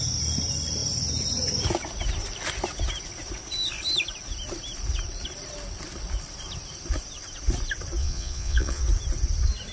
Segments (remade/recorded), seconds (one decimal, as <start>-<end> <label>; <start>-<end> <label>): 0.0-8.0 recorded; 8.0-8.8 remade; 8.8-9.7 recorded